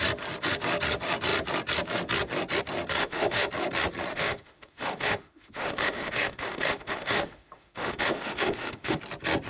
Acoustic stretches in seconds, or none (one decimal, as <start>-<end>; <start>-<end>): 0.0-3.0; 3.5-4.1; 9.0-9.5